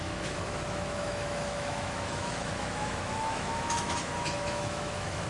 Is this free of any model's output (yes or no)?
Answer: no